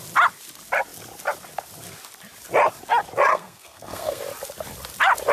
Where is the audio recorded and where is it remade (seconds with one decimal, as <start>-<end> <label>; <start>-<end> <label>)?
0.0-3.3 recorded; 3.3-4.2 remade; 4.2-5.3 recorded